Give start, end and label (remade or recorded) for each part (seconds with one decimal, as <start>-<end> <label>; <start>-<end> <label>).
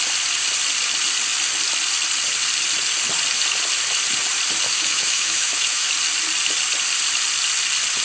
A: 0.0-4.7 recorded; 4.7-5.9 remade; 5.9-8.0 recorded